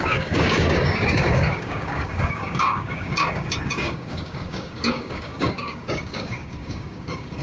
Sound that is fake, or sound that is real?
fake